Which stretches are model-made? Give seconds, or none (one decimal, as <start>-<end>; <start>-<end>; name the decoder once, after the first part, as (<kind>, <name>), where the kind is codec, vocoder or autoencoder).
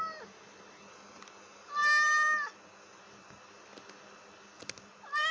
none